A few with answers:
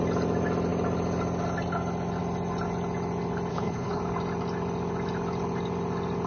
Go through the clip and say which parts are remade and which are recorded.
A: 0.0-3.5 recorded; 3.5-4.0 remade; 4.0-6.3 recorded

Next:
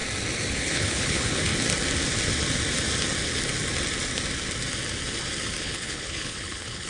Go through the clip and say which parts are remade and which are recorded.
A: 0.0-0.5 recorded; 0.5-1.5 remade; 1.5-5.6 recorded; 5.6-6.9 remade

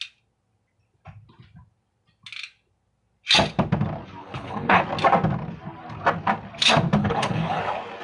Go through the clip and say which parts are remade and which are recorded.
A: 0.0-4.2 recorded; 4.2-4.8 remade; 4.8-7.0 recorded; 7.0-7.6 remade; 7.6-8.0 recorded

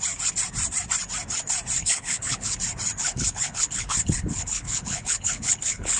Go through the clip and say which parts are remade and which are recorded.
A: 0.0-1.8 recorded; 1.8-2.6 remade; 2.6-3.0 recorded; 3.0-6.0 remade

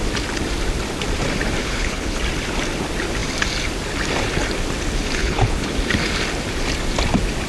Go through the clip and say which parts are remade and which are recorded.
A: 0.0-1.6 recorded; 1.6-2.2 remade; 2.2-5.2 recorded; 5.2-5.7 remade; 5.7-7.5 recorded

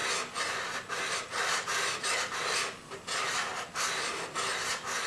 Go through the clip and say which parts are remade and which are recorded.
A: 0.0-5.1 recorded